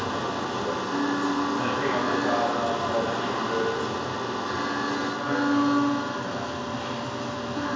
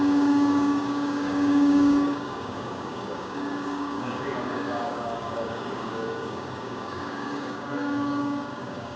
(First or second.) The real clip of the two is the first